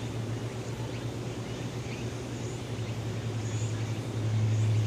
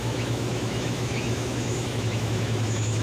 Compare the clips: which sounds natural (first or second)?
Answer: first